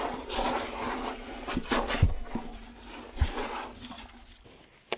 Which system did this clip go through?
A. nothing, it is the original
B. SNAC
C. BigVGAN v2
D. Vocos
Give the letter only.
A